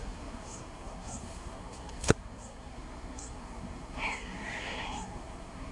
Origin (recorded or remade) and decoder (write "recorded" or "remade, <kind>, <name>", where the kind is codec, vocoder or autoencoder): remade, codec, SNAC